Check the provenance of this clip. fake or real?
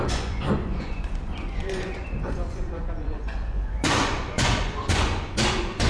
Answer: fake